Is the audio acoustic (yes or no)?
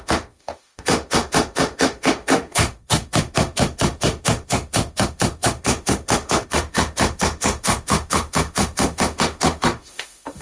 no